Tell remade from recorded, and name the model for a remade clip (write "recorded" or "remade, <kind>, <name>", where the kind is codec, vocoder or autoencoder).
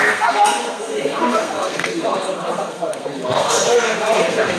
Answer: remade, codec, SNAC